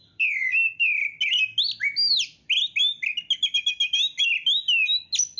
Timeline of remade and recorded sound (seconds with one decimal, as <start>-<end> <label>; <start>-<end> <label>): 0.0-5.4 recorded